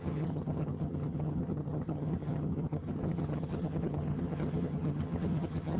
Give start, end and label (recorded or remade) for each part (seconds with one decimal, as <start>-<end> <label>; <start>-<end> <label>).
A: 0.0-5.8 remade